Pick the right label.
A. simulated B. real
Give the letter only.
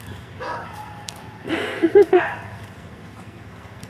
A